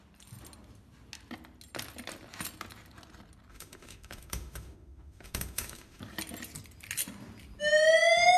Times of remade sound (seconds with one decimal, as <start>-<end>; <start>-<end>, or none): 3.5-6.0